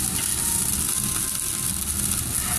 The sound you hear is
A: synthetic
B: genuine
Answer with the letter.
B